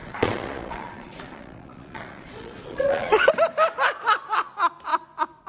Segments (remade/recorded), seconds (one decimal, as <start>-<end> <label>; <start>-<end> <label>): 0.0-3.3 remade; 3.3-5.5 recorded